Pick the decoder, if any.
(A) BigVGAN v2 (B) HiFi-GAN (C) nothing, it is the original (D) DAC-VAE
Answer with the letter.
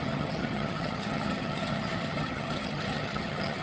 B